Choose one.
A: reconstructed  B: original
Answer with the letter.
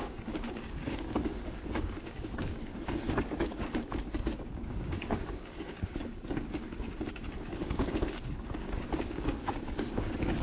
A